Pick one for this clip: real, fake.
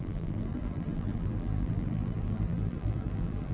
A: fake